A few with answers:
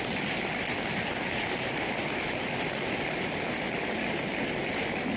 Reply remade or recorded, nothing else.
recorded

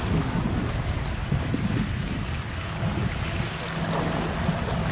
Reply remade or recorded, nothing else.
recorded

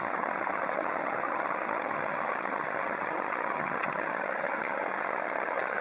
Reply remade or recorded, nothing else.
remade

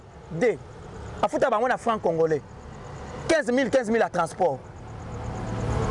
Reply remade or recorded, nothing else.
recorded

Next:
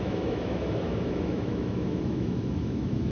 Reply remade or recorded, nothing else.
remade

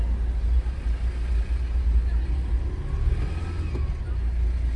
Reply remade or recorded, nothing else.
recorded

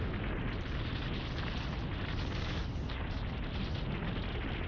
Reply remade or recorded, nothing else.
recorded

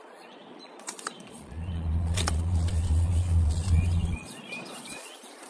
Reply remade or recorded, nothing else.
remade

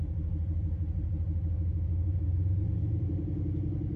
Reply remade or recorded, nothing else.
recorded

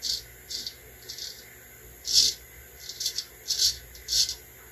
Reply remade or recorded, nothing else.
recorded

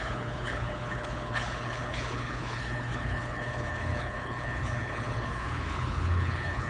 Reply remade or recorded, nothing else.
remade